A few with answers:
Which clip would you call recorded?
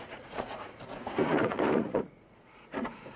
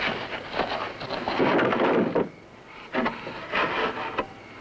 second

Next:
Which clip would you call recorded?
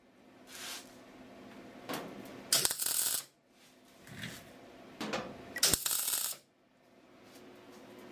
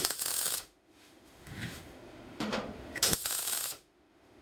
first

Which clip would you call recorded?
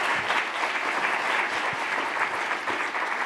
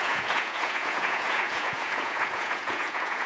first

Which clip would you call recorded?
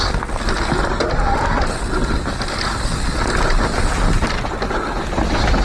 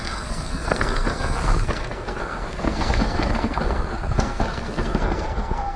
first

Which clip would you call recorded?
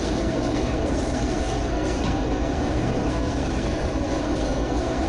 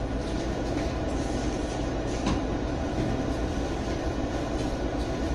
second